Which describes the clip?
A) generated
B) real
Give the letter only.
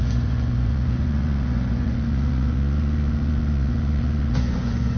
A